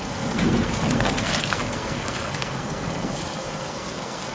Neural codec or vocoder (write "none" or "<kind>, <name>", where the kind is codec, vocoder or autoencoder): codec, SNAC